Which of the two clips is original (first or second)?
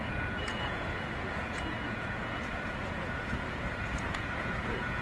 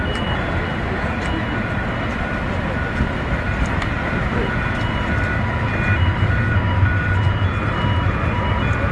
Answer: second